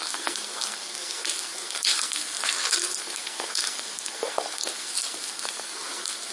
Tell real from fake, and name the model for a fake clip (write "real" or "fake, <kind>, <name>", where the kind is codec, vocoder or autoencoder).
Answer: fake, codec, SNAC